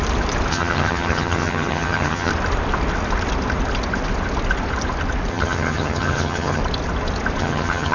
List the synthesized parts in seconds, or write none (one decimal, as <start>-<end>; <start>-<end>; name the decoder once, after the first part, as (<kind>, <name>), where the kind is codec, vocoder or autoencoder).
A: 0.5-2.3 (vocoder, HiFi-GAN); 5.3-6.6; 7.4-7.9